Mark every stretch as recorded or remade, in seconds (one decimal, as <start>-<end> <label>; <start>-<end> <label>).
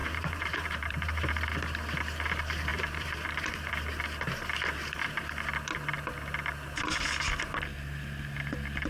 0.0-1.3 remade; 1.3-2.7 recorded; 2.7-3.7 remade; 3.7-8.9 recorded